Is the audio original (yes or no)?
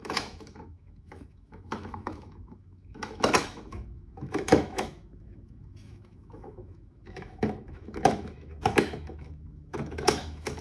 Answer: no